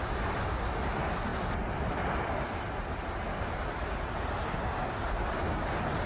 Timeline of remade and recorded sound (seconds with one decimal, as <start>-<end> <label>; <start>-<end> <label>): 0.0-6.1 recorded